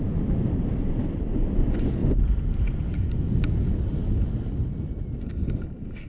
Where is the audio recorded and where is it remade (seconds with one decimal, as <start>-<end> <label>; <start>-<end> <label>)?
0.0-6.1 recorded